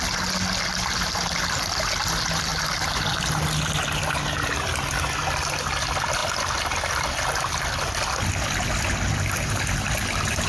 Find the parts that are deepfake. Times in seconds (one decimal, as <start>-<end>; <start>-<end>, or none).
2.5-3.1